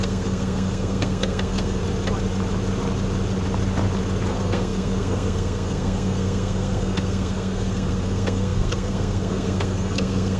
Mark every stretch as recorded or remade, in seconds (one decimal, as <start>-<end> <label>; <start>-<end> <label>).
0.0-1.8 remade; 1.8-4.3 recorded; 4.3-10.4 remade